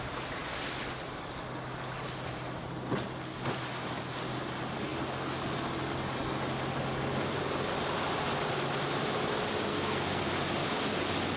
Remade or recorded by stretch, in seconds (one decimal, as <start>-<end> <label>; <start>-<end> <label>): 0.0-9.7 recorded; 9.7-10.3 remade; 10.3-11.4 recorded